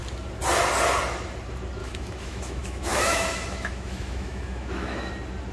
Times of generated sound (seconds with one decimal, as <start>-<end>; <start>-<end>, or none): 1.8-5.1